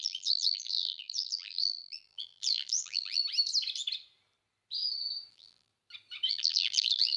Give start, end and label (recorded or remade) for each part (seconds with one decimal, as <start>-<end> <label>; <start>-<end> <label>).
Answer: 0.0-3.2 remade; 3.2-5.3 recorded; 5.3-5.7 remade; 5.7-6.3 recorded; 6.3-7.2 remade